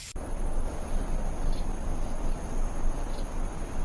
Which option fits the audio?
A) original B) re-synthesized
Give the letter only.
A